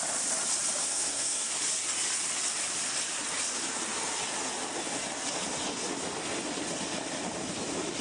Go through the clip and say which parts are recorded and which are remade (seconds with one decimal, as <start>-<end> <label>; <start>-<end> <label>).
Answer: 0.0-0.8 recorded; 0.8-1.5 remade; 1.5-8.0 recorded